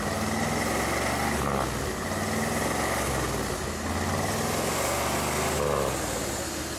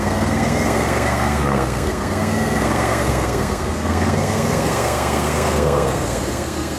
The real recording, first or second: first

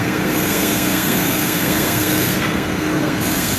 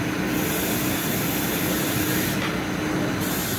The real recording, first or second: second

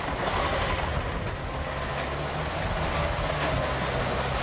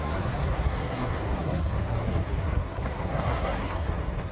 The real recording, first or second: first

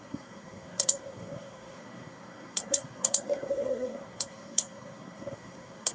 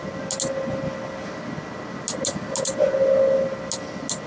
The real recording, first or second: second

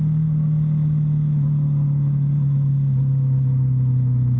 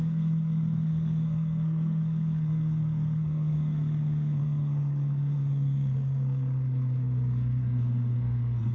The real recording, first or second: first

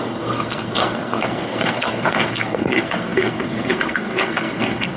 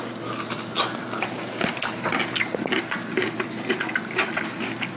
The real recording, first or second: second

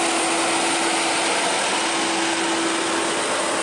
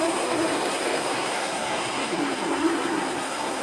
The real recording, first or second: first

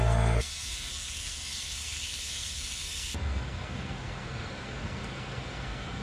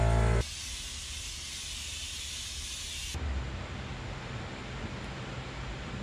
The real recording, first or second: second